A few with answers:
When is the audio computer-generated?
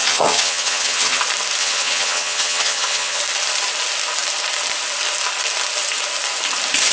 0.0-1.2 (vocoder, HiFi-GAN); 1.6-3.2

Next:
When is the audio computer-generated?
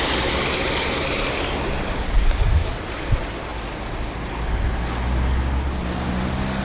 none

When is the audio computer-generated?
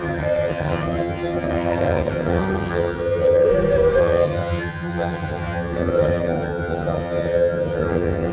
0.0-3.5 (vocoder, HiFi-GAN); 4.0-8.3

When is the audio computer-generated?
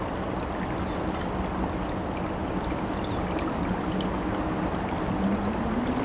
none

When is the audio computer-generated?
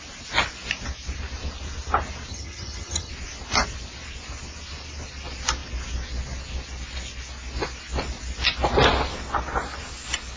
2.3-3.1 (vocoder, HiFi-GAN)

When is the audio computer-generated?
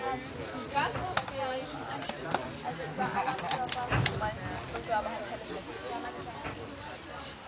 none